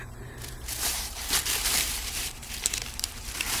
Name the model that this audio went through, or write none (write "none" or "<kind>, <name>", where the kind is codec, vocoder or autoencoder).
vocoder, BigVGAN v2